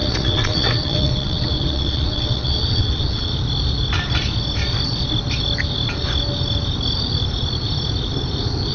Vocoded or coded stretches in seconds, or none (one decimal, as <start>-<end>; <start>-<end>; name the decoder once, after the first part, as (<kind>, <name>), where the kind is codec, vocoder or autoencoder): 0.0-3.3 (vocoder, WaveNeXt)